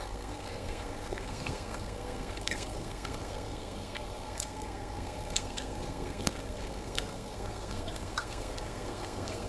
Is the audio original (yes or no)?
no